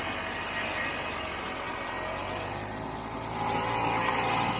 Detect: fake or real real